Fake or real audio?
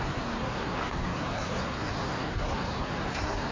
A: fake